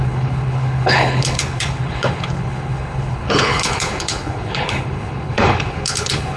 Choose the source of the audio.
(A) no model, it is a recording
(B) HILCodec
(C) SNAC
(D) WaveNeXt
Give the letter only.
B